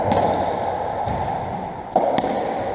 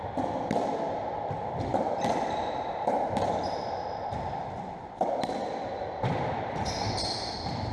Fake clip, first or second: second